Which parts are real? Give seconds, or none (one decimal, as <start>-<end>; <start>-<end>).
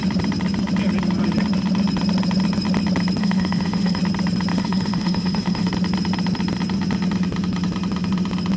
0.0-3.2; 4.0-4.5; 5.7-8.6